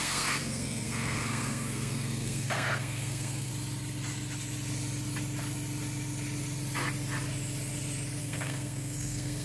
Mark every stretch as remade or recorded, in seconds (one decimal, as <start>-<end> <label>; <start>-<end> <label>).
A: 0.0-3.5 remade; 3.5-8.2 recorded; 8.2-9.4 remade